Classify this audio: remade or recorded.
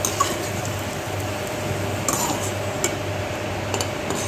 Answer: recorded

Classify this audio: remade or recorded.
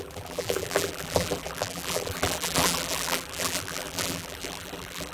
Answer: remade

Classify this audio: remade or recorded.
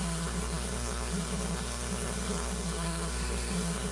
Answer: remade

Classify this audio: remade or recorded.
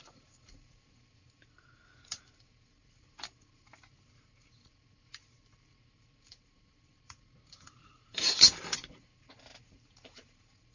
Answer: remade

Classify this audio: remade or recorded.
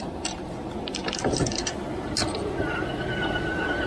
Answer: remade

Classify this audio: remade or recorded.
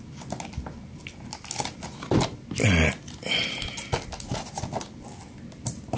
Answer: recorded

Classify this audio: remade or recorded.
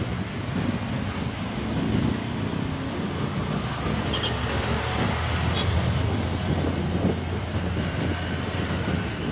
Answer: recorded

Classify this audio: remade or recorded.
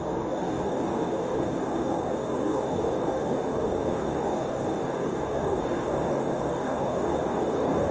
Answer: remade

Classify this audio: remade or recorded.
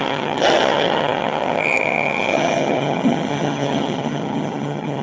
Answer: remade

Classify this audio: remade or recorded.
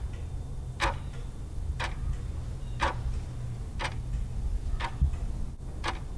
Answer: recorded